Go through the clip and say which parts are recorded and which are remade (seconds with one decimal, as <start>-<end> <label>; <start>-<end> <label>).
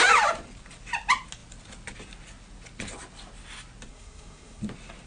0.0-3.9 recorded; 3.9-4.6 remade; 4.6-5.1 recorded